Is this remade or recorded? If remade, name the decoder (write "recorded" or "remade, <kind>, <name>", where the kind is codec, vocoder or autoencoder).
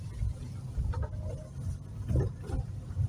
recorded